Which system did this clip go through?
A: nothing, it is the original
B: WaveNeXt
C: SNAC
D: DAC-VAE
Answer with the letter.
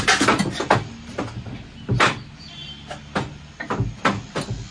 A